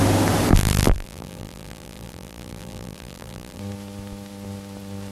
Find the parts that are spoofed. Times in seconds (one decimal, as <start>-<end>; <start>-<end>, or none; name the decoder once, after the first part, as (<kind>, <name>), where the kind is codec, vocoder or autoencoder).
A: 0.5-3.6 (vocoder, BigVGAN v2)